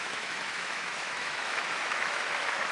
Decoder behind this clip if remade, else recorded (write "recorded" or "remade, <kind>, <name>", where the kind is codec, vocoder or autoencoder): remade, autoencoder, DAC-VAE